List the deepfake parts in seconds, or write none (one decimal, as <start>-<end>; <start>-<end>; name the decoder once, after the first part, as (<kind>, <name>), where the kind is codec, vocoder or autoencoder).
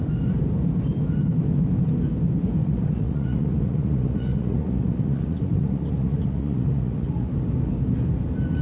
2.6-7.3 (vocoder, Vocos)